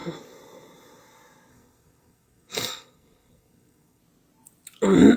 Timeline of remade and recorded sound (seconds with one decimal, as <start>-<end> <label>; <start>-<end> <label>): 0.0-1.5 recorded; 1.5-4.0 remade; 4.0-5.2 recorded